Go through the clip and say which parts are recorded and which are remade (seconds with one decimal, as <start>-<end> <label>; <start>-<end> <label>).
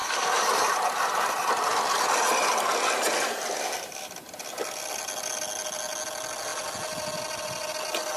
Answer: 0.0-1.5 remade; 1.5-8.2 recorded